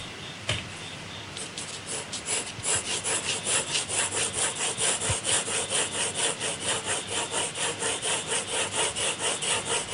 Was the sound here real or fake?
real